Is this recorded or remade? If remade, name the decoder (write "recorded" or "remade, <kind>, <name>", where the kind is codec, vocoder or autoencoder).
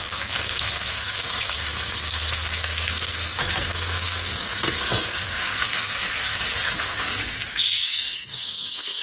remade, codec, SNAC